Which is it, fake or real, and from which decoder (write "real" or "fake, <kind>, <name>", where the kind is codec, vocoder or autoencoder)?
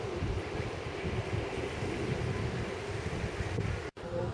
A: real